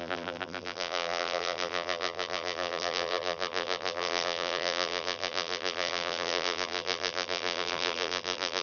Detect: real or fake fake